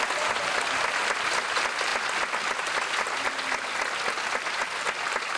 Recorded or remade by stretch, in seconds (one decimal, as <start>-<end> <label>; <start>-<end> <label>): 0.0-5.4 recorded